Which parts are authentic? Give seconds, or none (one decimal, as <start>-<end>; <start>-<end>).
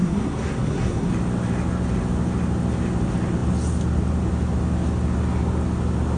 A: 1.1-6.2